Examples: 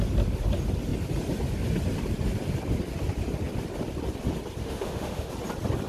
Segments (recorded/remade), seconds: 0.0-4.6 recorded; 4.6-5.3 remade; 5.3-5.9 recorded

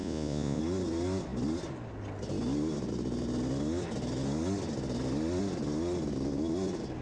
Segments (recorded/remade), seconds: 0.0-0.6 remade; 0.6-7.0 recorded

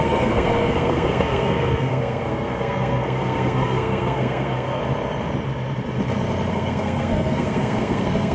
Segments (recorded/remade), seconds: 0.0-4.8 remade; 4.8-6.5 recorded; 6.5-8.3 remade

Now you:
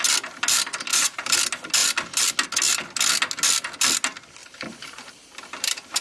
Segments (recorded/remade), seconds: 0.0-0.9 recorded; 0.9-1.4 remade; 1.4-4.4 recorded; 4.4-6.0 remade

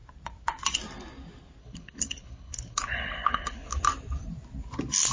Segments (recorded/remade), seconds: 0.0-1.6 recorded; 1.6-3.8 remade; 3.8-5.1 recorded

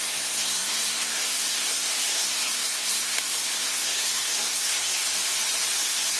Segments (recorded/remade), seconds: 0.0-5.0 remade; 5.0-5.8 recorded; 5.8-6.2 remade

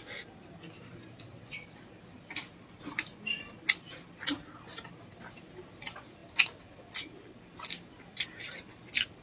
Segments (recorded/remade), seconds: 0.0-9.2 recorded

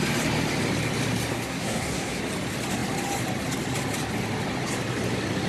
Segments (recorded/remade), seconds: 0.0-1.3 recorded; 1.3-2.2 remade; 2.2-5.5 recorded